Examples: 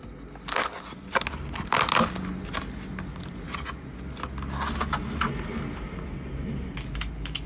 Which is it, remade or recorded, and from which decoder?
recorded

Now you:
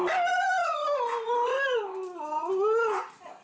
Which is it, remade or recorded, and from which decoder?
recorded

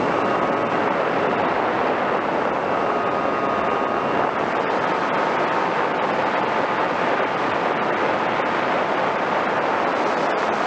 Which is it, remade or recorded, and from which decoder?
recorded